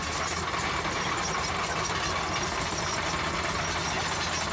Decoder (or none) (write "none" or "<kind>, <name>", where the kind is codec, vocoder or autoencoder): none